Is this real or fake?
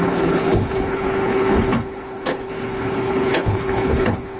fake